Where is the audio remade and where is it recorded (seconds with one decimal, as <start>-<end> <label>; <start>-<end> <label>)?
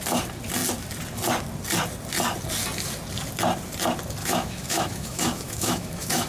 0.0-4.2 recorded; 4.2-6.3 remade